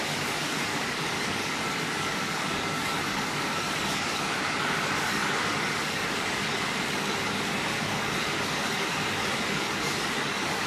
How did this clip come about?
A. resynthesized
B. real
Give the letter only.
A